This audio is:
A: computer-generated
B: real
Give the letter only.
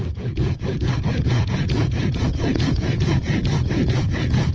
A